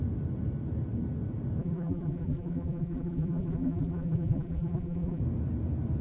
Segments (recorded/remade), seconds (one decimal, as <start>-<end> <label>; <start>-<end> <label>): 0.0-1.6 recorded; 1.6-5.2 remade; 5.2-6.0 recorded